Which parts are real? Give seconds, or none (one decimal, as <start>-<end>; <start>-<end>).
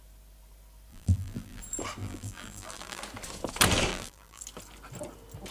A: 0.0-0.9; 1.6-2.0; 3.0-3.9; 4.4-5.5